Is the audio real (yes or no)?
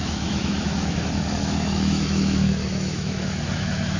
no